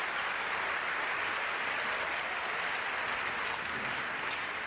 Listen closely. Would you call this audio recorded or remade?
recorded